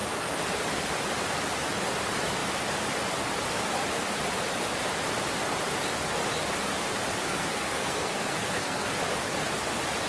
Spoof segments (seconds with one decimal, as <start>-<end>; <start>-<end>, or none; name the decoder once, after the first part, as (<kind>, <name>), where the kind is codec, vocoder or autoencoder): 7.2-8.9 (codec, SNAC)

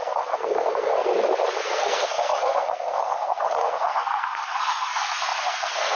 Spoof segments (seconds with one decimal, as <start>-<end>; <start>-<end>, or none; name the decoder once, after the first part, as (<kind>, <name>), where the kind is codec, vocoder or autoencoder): 0.0-1.1 (codec, SNAC); 1.6-6.0